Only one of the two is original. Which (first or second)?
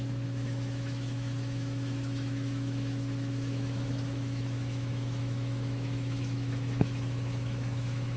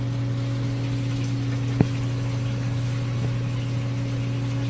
second